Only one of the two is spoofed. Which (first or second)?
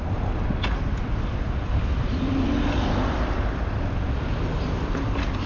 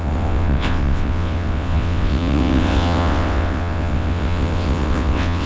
second